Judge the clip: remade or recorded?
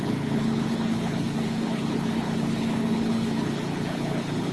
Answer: remade